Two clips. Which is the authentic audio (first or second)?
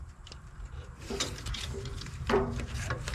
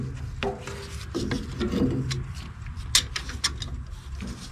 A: second